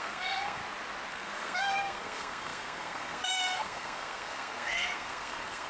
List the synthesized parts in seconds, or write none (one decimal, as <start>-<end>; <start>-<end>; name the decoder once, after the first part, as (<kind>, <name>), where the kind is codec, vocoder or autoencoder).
0.0-0.6 (codec, SNAC); 1.1-5.7